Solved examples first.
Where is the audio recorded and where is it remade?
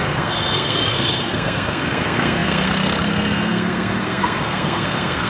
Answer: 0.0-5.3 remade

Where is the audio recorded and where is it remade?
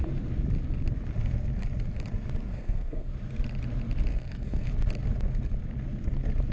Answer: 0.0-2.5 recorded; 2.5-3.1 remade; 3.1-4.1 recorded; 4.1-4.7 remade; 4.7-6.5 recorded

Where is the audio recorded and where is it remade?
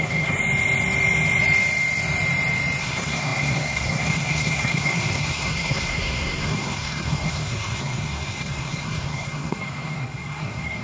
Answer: 0.0-0.4 remade; 0.4-2.8 recorded; 2.8-10.8 remade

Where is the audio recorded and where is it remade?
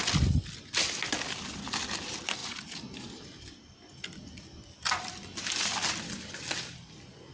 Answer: 0.0-7.3 recorded